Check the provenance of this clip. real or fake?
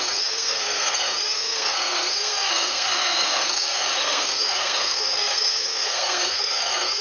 fake